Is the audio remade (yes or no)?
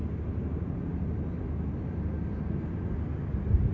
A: no